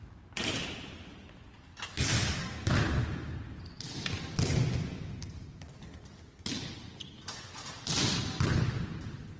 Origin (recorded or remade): recorded